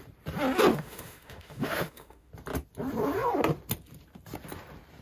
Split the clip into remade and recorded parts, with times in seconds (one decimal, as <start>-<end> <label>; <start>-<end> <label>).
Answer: 0.0-0.7 recorded; 0.7-2.3 remade; 2.3-5.0 recorded